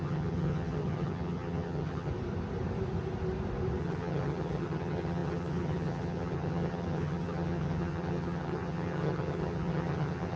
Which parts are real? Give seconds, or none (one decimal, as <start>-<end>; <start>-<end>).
2.1-3.8